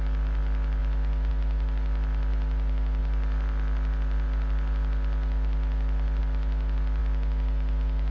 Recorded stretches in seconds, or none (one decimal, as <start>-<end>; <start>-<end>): 0.0-8.1